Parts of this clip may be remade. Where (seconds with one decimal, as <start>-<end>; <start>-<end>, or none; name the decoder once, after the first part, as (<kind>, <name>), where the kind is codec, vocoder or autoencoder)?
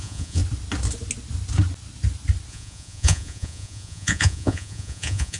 0.0-0.4 (vocoder, Vocos); 2.5-5.4